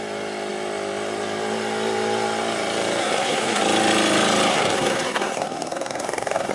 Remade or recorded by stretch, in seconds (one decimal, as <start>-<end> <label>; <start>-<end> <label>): 0.0-3.0 recorded; 3.0-3.6 remade; 3.6-4.5 recorded; 4.5-6.5 remade